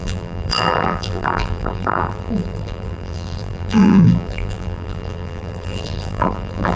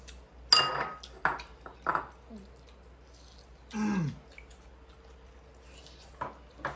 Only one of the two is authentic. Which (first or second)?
second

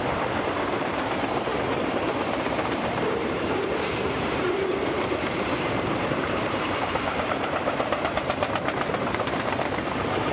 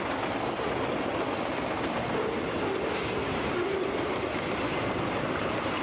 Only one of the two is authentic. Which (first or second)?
second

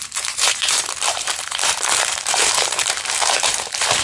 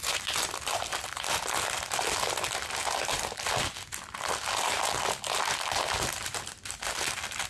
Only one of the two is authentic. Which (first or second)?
second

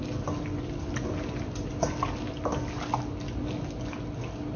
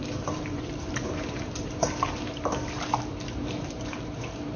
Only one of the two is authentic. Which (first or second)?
first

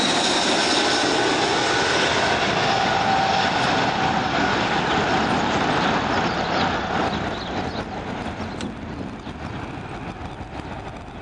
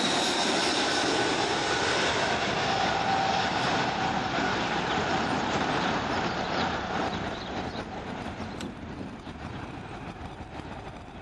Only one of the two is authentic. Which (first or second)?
first